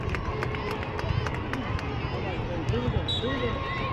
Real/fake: real